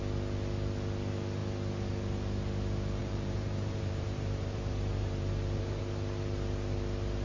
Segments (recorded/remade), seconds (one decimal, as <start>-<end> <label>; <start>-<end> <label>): 0.0-3.0 recorded; 3.0-5.8 remade; 5.8-7.2 recorded